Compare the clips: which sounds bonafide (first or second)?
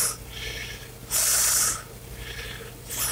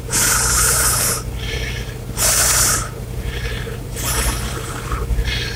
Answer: first